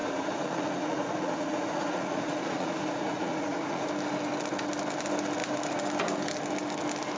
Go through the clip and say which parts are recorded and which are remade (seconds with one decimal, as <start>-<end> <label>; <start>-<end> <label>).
0.0-3.9 remade; 3.9-7.2 recorded